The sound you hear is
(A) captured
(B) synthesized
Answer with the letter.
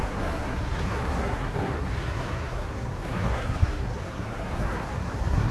B